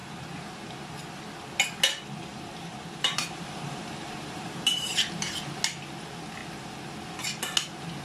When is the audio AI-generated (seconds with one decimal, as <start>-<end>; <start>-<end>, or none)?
0.0-0.9; 2.3-5.3

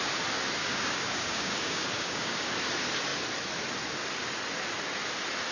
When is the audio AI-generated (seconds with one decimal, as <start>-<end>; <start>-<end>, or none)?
0.6-2.5

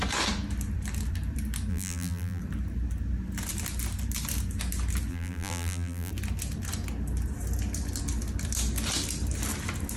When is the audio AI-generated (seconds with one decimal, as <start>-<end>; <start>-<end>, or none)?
1.7-2.4; 5.1-6.1

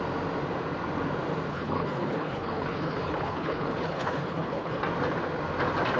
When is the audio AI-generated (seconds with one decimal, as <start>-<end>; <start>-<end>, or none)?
1.5-4.8